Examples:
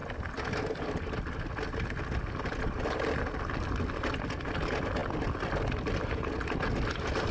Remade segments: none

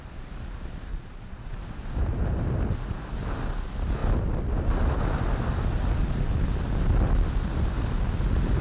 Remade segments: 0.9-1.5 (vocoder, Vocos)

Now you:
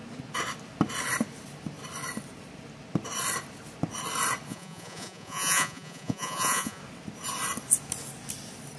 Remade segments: 4.5-6.8 (vocoder, Vocos)

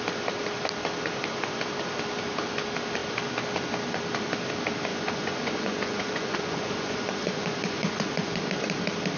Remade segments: 4.9-8.4 (vocoder, Vocos)